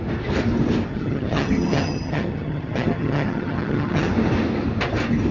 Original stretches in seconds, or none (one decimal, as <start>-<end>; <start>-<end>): 0.0-0.9; 4.1-5.3